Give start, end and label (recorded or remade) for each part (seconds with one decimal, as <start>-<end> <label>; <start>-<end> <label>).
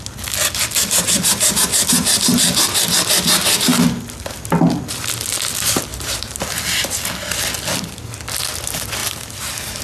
0.0-5.9 recorded; 5.9-6.4 remade; 6.4-9.0 recorded; 9.0-9.8 remade